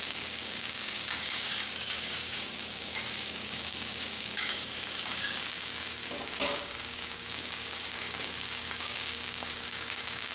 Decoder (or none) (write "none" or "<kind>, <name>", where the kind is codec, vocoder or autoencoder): codec, DAC